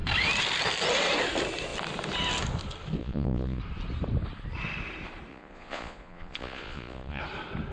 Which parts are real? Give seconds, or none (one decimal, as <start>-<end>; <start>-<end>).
0.0-3.0; 3.6-5.3; 7.2-7.7